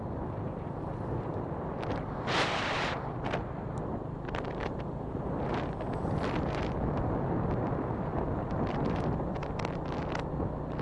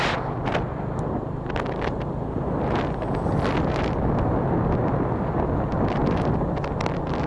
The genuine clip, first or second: second